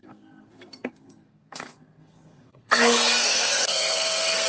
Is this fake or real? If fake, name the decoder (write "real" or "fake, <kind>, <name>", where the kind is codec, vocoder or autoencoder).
fake, codec, SNAC